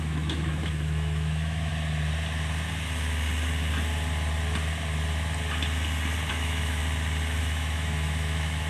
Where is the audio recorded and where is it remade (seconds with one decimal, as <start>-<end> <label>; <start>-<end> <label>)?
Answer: 0.0-1.7 remade; 1.7-6.3 recorded; 6.3-6.8 remade; 6.8-7.4 recorded; 7.4-8.7 remade